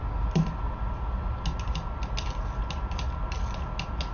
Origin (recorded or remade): recorded